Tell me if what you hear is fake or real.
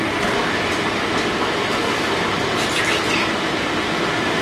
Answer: real